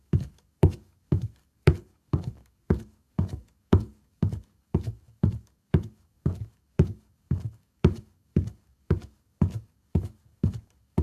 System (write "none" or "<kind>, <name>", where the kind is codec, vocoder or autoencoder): codec, DAC